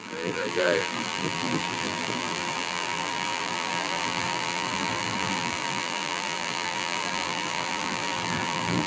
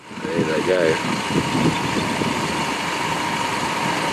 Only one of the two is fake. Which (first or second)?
first